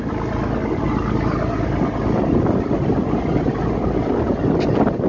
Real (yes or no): yes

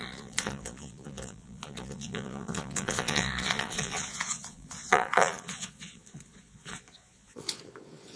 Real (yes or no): no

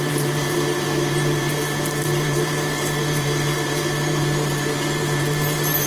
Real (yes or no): no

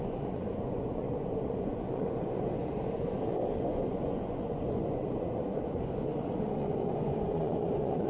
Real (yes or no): no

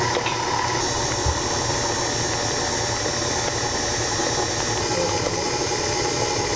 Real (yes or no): yes